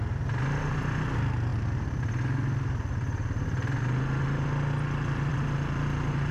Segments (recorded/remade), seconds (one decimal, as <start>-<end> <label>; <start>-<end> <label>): 0.0-6.3 recorded